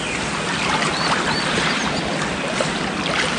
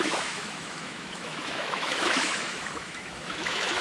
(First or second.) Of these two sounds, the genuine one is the first